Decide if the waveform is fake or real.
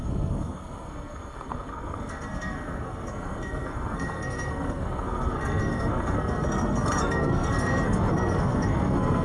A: fake